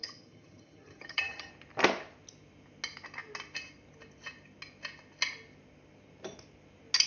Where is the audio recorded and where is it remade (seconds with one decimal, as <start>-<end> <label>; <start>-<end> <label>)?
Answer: 0.0-1.5 remade; 1.5-7.1 recorded